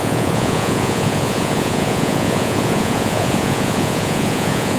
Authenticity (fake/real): fake